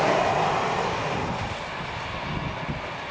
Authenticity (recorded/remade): recorded